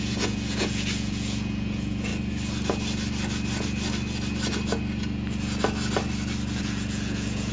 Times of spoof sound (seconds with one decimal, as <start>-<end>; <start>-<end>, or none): 0.0-2.1; 6.6-7.5

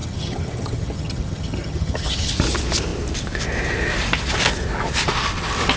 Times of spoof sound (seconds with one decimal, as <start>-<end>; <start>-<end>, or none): 0.0-2.3

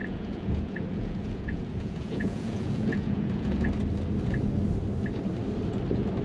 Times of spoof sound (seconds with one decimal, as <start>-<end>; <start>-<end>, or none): 0.0-3.7

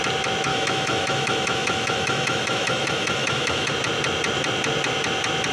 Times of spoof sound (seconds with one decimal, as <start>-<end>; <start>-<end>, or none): 0.5-3.7

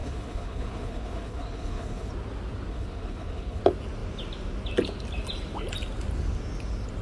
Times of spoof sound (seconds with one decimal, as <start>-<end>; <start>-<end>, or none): 0.0-2.1; 2.7-3.6

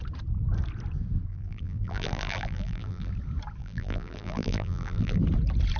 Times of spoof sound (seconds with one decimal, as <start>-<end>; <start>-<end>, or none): 1.3-3.1; 3.6-5.2

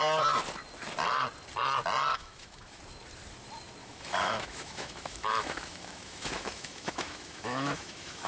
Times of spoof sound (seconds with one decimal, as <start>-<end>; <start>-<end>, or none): 2.1-2.8; 3.8-8.3